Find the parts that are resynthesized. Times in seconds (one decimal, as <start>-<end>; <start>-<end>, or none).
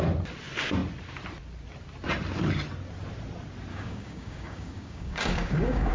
3.7-5.9